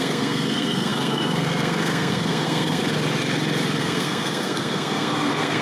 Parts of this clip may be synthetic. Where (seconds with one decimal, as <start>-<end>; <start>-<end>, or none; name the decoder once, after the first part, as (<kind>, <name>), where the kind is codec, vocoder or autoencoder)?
0.0-2.8 (codec, SNAC); 3.8-5.6